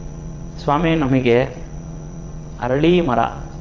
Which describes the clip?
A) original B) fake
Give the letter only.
B